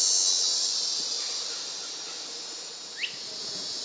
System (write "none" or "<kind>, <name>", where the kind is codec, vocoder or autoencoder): none